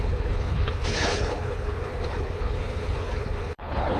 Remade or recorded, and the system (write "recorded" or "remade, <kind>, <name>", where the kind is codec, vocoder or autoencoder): remade, codec, HILCodec